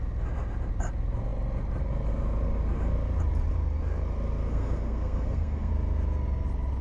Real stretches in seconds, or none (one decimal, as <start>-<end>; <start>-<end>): 0.0-4.5; 5.7-6.8